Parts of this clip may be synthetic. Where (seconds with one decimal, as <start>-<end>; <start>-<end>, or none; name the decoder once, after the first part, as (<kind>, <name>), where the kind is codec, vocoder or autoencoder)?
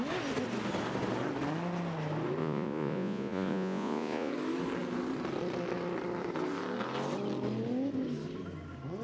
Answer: 2.4-4.3 (vocoder, Vocos)